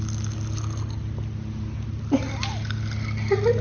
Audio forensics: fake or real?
real